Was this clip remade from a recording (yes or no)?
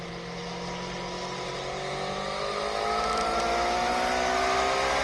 no